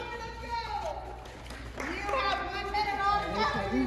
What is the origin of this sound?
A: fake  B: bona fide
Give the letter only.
B